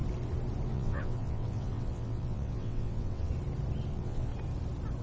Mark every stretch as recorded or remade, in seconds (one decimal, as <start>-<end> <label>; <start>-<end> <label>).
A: 0.0-0.7 recorded; 0.7-3.3 remade; 3.3-3.9 recorded; 3.9-4.3 remade; 4.3-5.0 recorded